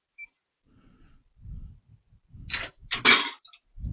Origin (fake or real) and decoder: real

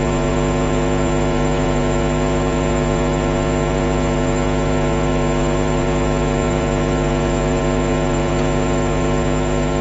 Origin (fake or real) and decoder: fake, vocoder, Vocos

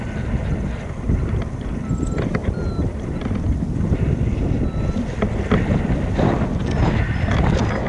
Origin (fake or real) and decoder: real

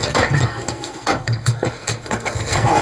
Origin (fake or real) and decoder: fake, codec, SNAC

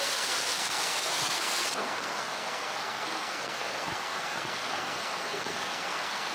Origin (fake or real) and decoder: fake, codec, SNAC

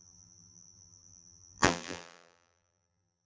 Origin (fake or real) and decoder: fake, vocoder, BigVGAN v2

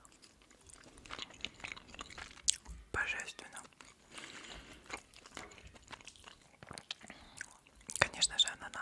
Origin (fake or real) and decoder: real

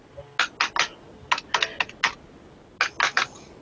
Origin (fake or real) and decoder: real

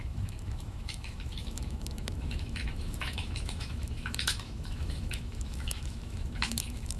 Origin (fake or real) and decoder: fake, autoencoder, DAC-VAE